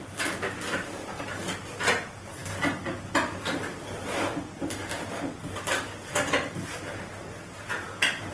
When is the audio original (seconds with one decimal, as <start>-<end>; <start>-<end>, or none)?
0.0-8.3